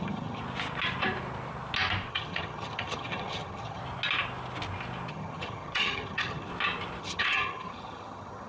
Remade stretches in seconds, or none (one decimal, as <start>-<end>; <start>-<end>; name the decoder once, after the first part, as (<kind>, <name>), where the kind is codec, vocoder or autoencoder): 0.0-0.4 (vocoder, HiFi-GAN); 2.1-3.8; 5.1-6.5; 7.0-8.5